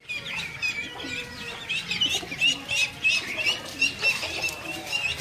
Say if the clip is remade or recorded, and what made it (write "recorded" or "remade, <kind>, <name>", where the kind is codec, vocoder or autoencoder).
recorded